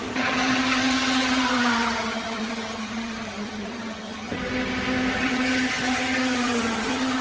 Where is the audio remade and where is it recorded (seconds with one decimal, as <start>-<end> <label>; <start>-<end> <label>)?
0.0-4.4 remade; 4.4-5.2 recorded; 5.2-7.2 remade